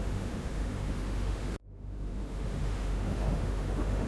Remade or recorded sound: remade